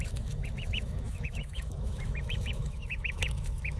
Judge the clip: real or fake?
fake